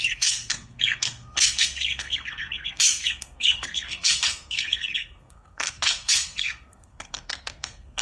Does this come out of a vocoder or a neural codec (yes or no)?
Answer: yes